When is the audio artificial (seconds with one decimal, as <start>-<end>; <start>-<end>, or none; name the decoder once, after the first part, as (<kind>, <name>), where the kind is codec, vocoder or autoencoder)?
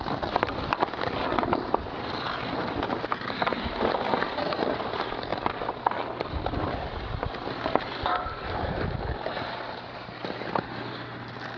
none